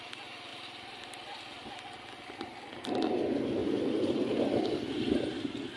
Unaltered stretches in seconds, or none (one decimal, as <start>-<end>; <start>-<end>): 0.0-3.6; 4.4-5.8